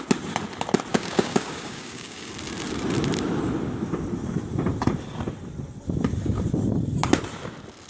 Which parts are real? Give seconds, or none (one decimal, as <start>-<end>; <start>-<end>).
0.0-0.9; 2.3-7.9